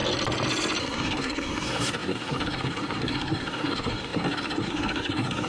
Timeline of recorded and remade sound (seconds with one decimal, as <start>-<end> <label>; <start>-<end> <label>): 0.0-0.8 recorded; 0.8-5.5 remade